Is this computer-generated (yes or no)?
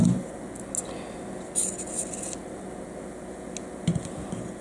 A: no